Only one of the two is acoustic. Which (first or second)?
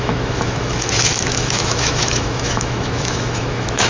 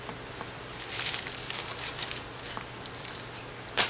second